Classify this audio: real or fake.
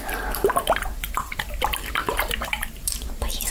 fake